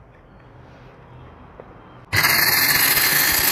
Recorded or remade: recorded